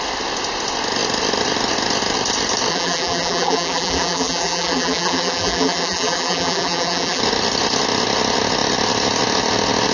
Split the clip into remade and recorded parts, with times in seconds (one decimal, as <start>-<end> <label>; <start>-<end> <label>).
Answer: 0.0-2.7 recorded; 2.7-7.2 remade; 7.2-9.9 recorded